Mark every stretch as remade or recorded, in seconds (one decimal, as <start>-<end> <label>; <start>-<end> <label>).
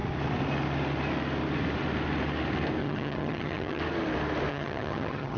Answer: 0.0-2.8 recorded; 2.8-3.8 remade; 3.8-4.5 recorded; 4.5-5.4 remade